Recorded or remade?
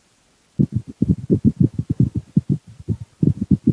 recorded